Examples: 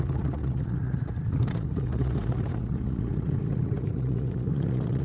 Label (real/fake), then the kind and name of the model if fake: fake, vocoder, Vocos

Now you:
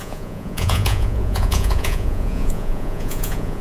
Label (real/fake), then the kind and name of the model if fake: fake, vocoder, Vocos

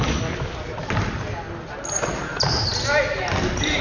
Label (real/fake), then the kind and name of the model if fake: real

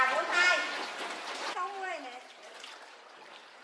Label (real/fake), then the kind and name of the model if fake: real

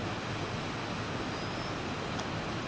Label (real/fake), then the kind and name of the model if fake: real